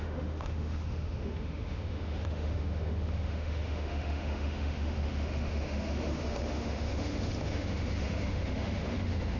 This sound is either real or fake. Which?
fake